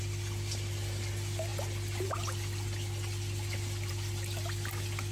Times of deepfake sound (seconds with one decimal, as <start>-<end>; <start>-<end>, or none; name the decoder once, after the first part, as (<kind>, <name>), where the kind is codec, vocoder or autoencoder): none